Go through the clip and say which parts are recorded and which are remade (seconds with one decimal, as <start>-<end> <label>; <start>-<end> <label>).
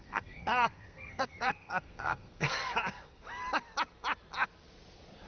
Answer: 0.0-3.2 remade; 3.2-5.3 recorded